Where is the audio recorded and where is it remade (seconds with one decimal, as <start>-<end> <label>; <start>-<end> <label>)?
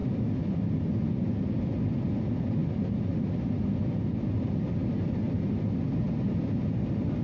0.0-7.2 recorded